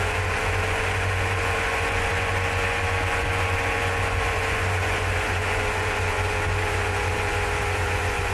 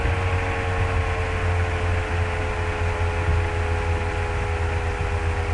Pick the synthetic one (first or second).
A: first